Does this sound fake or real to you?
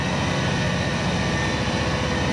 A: real